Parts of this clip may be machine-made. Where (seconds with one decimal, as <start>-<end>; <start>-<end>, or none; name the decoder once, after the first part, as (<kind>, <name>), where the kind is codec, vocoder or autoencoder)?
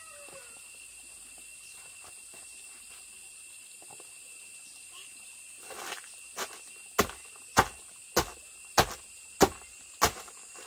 none